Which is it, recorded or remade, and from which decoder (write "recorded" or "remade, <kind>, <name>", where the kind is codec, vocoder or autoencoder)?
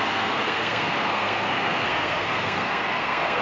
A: remade, codec, SNAC